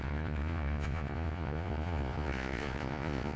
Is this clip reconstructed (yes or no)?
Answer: yes